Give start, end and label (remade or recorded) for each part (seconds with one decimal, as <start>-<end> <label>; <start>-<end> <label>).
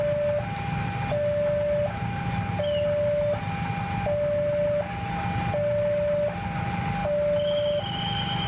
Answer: 0.0-8.5 recorded